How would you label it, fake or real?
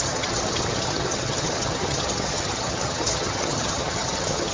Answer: fake